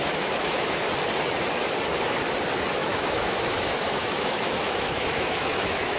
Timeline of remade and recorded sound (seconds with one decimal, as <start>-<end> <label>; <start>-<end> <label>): 0.0-0.8 remade; 0.8-2.8 recorded; 2.8-6.0 remade